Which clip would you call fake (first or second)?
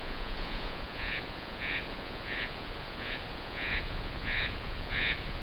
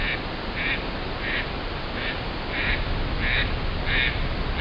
first